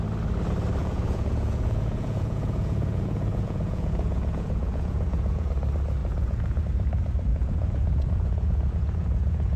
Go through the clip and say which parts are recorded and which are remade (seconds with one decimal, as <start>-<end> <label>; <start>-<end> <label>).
0.0-0.8 recorded; 0.8-5.5 remade; 5.5-6.0 recorded; 6.0-6.6 remade; 6.6-7.3 recorded; 7.3-9.6 remade